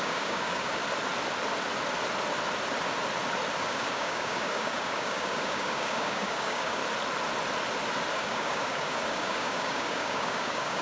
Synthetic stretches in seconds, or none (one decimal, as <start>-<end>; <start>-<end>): 0.0-0.8; 3.6-6.8; 8.1-10.8